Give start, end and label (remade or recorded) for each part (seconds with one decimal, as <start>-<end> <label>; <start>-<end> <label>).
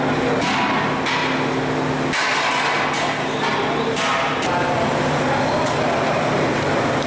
0.0-7.1 recorded